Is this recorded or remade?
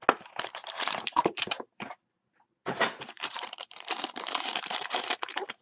remade